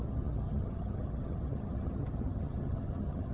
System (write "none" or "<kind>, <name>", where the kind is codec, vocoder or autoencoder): vocoder, HiFi-GAN